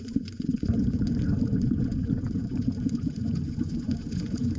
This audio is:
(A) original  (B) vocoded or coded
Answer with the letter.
B